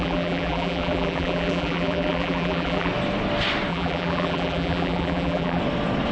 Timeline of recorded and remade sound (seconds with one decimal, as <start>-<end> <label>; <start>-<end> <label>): 0.0-2.9 remade; 2.9-3.7 recorded; 3.7-5.6 remade; 5.6-6.1 recorded